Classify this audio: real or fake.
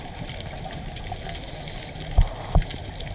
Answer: real